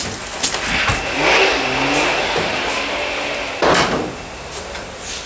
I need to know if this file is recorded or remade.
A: recorded